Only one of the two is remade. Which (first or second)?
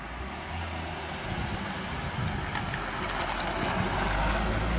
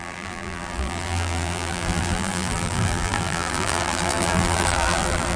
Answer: second